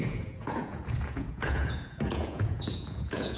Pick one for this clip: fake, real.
fake